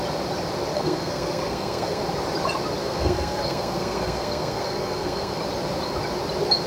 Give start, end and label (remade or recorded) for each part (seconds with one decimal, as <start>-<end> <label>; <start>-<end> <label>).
0.0-0.7 recorded; 0.7-2.0 remade; 2.0-2.8 recorded; 2.8-5.4 remade; 5.4-6.7 recorded